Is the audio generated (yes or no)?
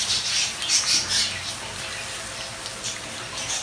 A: no